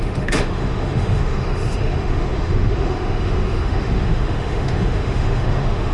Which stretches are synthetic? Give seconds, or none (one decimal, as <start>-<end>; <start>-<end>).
0.0-5.9